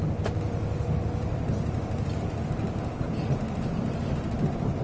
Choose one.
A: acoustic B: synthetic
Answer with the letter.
A